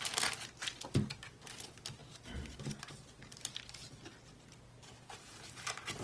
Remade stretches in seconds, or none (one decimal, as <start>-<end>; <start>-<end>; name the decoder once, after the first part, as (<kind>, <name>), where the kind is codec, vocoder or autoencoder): none